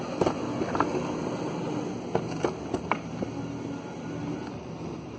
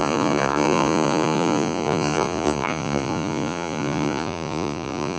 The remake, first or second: second